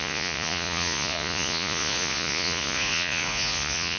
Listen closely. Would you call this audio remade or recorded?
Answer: remade